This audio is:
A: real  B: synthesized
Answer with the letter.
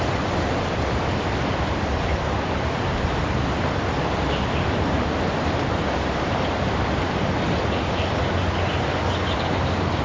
A